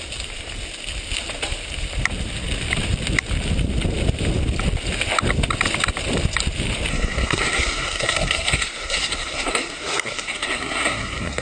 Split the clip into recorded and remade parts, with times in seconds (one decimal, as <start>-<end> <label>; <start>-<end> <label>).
0.0-6.9 recorded; 6.9-11.4 remade